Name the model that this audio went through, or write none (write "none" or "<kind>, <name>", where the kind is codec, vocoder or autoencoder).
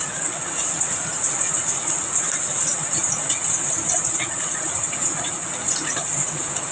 vocoder, Vocos